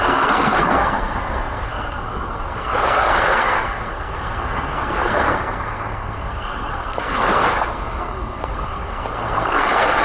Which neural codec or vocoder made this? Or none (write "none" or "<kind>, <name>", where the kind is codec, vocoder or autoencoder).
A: codec, SNAC